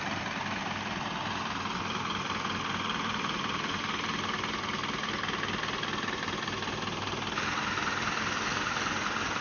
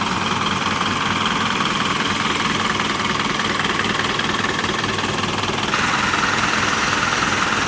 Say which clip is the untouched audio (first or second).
first